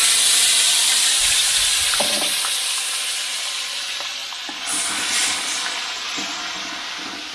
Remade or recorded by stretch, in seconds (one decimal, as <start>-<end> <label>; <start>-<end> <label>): 0.0-7.3 recorded